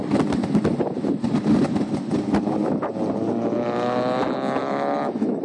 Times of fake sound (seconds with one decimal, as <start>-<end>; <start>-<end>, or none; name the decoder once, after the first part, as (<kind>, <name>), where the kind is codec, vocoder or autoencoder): 4.6-5.4 (autoencoder, DAC-VAE)